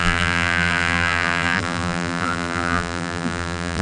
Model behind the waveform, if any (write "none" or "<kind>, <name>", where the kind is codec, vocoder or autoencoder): vocoder, BigVGAN v2